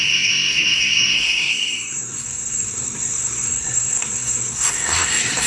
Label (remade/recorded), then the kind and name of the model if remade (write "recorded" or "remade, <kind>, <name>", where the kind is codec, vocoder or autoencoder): remade, codec, SNAC